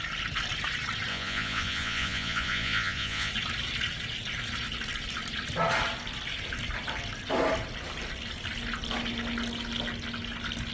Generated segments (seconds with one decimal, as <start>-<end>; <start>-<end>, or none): 1.1-3.3